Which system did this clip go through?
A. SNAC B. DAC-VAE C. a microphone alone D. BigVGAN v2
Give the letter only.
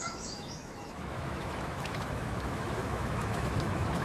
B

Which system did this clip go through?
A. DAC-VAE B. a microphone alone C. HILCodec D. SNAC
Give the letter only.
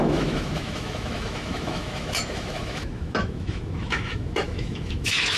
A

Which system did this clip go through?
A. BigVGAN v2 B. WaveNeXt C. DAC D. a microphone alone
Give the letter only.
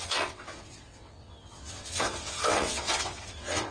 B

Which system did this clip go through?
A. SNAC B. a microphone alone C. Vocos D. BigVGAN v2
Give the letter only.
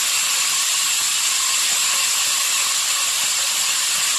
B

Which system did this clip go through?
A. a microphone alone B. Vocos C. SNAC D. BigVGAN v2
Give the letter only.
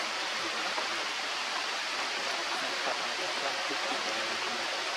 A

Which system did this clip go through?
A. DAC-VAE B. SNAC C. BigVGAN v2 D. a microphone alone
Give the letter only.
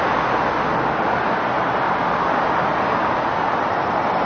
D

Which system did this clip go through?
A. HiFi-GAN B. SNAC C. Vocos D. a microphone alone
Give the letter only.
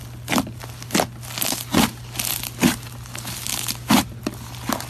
D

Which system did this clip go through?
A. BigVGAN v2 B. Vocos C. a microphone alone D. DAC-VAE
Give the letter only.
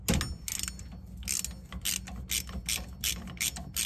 C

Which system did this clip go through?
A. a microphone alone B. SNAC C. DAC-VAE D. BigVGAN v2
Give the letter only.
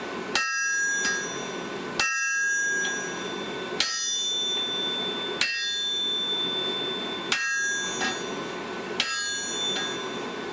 A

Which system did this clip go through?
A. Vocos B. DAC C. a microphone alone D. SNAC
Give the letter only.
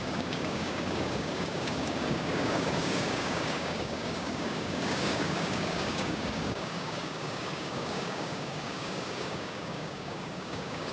B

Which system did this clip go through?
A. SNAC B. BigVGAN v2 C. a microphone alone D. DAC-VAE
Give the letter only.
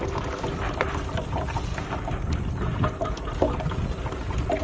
C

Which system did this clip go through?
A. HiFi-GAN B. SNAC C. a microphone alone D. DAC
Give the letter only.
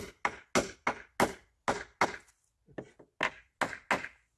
C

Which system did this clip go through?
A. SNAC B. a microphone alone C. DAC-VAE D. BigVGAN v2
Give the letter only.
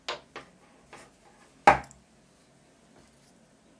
B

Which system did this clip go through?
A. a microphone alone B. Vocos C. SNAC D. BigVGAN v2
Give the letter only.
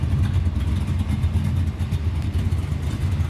A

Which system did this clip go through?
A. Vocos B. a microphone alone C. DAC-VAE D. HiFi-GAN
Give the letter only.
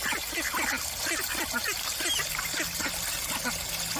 B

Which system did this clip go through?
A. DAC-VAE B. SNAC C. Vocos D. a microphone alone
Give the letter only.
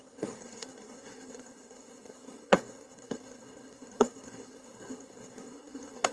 B